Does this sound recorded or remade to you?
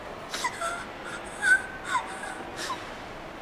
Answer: recorded